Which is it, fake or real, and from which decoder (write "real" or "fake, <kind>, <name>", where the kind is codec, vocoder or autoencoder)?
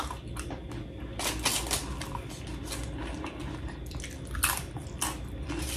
real